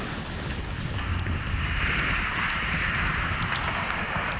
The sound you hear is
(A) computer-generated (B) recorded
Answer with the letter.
B